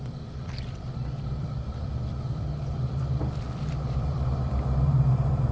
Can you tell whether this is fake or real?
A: fake